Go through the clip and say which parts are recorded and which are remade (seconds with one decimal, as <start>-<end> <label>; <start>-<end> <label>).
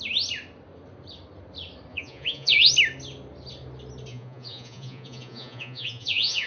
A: 0.0-1.9 recorded; 1.9-2.7 remade; 2.7-4.1 recorded; 4.1-6.5 remade